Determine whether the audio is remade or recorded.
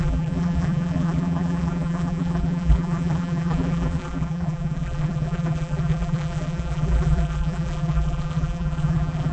remade